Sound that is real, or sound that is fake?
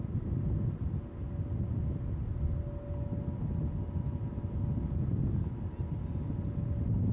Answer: real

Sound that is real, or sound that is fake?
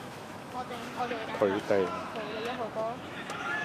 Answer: fake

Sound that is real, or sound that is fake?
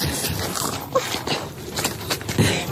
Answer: real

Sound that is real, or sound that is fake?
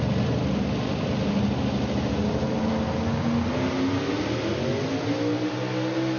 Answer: real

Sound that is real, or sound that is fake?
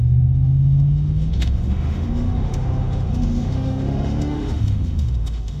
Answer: fake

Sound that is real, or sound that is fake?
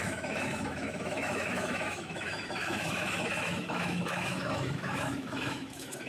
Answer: fake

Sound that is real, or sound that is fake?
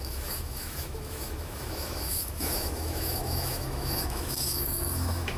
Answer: fake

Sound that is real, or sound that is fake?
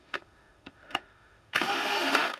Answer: fake